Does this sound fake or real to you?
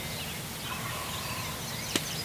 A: real